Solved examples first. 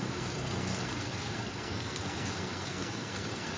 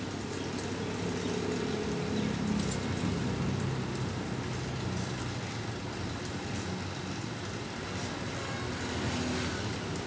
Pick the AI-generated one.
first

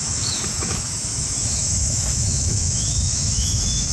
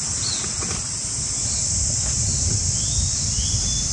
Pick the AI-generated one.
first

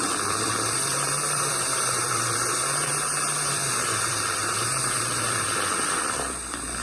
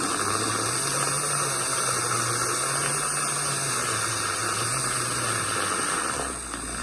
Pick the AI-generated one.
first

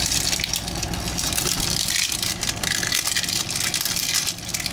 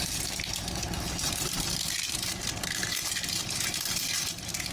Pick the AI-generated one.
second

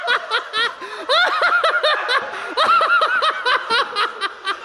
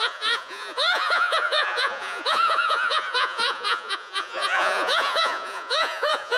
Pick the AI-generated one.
second